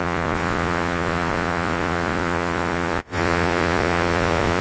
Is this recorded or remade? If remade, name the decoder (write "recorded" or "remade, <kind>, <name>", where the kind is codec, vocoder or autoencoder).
remade, vocoder, Vocos